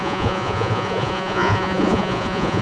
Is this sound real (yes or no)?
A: no